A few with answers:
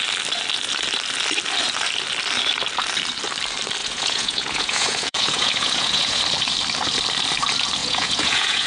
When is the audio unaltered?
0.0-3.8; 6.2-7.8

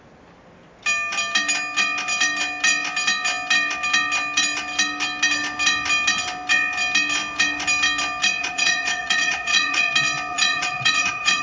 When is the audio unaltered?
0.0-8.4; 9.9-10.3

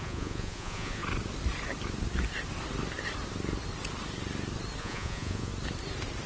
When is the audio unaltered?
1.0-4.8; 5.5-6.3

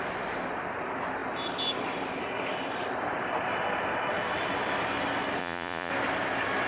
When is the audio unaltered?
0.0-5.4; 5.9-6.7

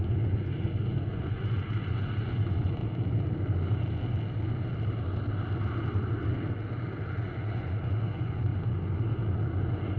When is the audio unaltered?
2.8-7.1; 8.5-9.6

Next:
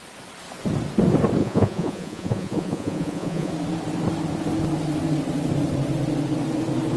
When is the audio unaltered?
0.0-1.4; 3.5-7.0